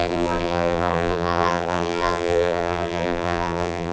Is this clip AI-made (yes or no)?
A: yes